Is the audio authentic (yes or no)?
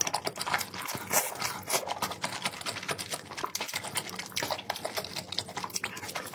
yes